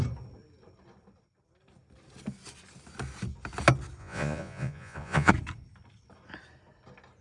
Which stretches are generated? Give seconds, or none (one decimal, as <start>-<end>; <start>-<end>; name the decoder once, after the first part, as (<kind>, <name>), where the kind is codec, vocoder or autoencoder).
4.0-5.3 (vocoder, Vocos)